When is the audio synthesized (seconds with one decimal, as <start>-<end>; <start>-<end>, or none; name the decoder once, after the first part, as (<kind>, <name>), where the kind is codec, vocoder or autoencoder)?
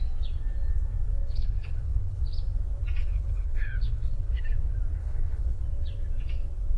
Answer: 1.2-2.2 (codec, HILCodec); 3.0-4.4; 5.0-5.6